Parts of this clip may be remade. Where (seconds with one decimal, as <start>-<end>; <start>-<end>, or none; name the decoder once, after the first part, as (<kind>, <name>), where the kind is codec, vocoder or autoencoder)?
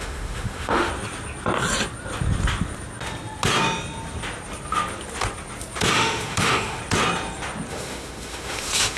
0.0-0.9 (autoencoder, DAC-VAE); 5.9-6.8; 7.7-9.0